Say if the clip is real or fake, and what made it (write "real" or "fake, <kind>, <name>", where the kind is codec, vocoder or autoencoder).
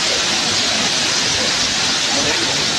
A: real